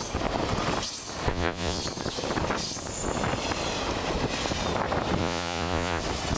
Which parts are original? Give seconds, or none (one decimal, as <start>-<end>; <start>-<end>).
0.0-1.3; 1.8-5.2; 6.0-6.4